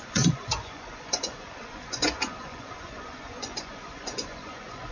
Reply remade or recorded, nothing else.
remade